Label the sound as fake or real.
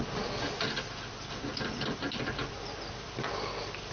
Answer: real